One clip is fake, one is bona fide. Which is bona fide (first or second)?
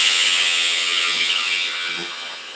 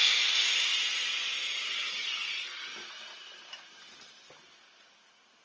second